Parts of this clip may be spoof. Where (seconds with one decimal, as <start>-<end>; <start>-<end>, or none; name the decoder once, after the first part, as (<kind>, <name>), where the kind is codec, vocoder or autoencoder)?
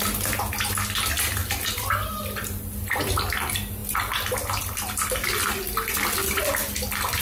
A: none